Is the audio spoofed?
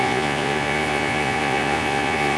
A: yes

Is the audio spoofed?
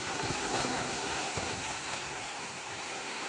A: yes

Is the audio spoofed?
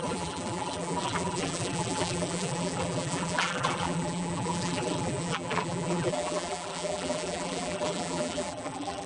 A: yes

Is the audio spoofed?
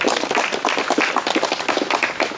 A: no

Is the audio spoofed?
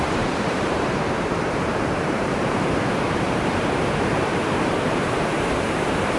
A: yes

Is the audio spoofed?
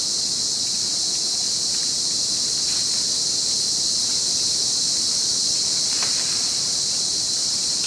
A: no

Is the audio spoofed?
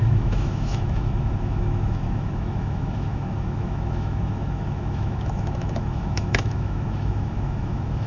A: yes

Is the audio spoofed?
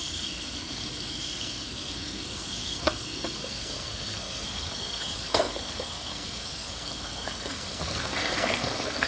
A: yes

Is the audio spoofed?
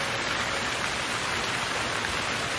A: no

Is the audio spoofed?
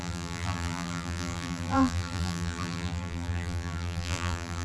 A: yes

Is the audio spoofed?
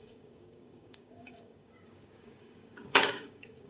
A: yes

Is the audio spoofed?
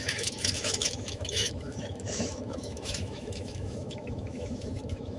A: yes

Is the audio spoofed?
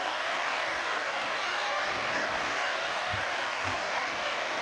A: yes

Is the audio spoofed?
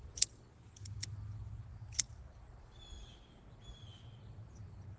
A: no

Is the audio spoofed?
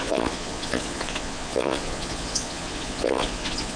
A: yes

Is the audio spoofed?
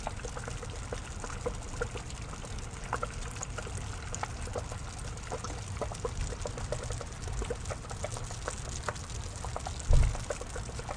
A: no